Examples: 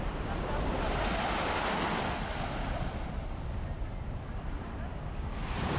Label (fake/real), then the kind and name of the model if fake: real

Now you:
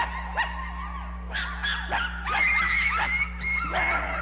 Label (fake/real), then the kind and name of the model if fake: real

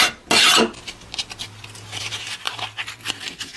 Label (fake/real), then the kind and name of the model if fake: real